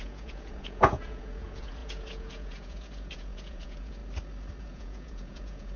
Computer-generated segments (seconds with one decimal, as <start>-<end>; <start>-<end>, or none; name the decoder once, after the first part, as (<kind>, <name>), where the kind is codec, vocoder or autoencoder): 0.0-4.0 (vocoder, Vocos); 4.6-5.8